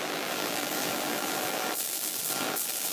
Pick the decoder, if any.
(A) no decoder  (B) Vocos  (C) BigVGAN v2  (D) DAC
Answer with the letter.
C